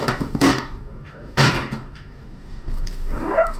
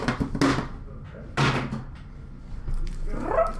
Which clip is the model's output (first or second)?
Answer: first